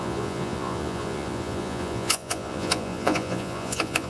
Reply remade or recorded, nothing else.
remade